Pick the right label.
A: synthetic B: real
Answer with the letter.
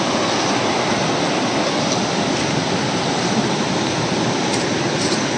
B